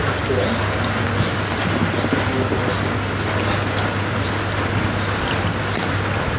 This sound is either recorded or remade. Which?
recorded